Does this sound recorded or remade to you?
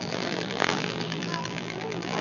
remade